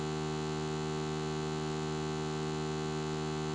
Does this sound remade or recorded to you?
recorded